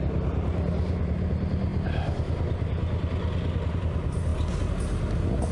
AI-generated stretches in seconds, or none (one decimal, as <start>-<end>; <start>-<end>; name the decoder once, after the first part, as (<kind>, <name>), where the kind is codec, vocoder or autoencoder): none